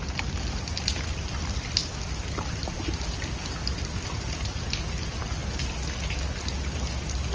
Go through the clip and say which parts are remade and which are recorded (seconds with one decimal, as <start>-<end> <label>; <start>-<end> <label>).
0.0-1.8 recorded; 1.8-4.6 remade; 4.6-7.3 recorded